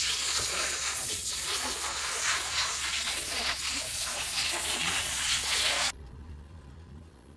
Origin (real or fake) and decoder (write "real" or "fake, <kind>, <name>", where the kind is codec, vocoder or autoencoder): fake, vocoder, Vocos